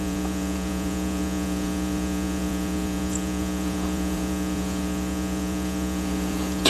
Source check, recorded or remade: remade